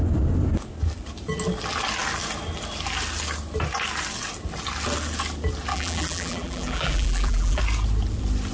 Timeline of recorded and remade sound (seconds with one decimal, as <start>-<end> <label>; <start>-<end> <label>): 0.0-5.7 recorded; 5.7-7.6 remade; 7.6-8.5 recorded